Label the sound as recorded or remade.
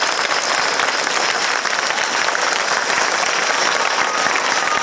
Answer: recorded